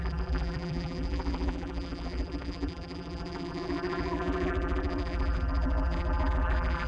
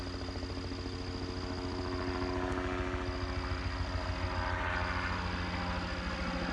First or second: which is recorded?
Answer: second